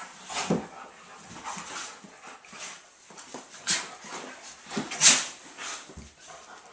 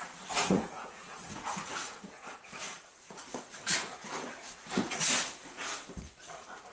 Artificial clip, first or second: second